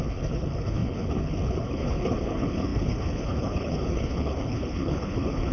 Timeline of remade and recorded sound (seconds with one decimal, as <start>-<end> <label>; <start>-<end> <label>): 0.0-5.5 remade